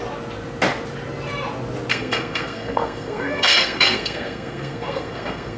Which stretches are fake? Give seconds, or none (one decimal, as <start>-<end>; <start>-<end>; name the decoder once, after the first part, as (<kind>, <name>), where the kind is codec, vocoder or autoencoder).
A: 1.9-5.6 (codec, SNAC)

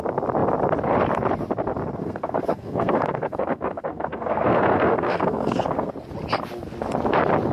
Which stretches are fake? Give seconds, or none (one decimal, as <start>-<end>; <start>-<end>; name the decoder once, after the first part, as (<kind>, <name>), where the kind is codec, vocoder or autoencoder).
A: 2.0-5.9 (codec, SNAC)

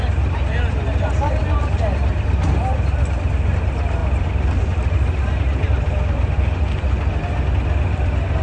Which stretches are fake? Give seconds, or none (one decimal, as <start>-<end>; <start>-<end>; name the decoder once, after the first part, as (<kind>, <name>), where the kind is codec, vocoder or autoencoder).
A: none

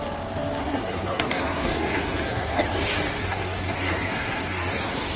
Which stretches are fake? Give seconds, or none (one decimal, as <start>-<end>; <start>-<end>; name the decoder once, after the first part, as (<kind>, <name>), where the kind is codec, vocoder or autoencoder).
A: 0.6-2.6 (codec, SNAC); 3.2-5.2

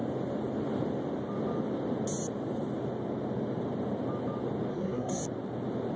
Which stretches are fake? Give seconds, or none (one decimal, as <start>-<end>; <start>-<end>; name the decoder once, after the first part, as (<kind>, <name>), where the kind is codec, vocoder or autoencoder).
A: 4.7-5.2 (codec, SNAC)